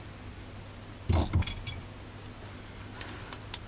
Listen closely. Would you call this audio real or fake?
real